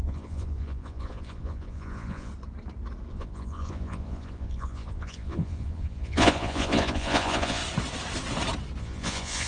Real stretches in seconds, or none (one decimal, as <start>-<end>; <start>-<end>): 2.3-3.1; 7.6-8.8